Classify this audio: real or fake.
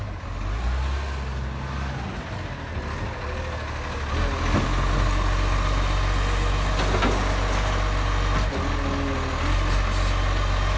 real